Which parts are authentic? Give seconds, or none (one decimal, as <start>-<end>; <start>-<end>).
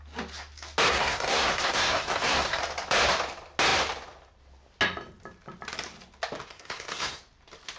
0.0-0.9; 2.6-6.5; 7.2-7.8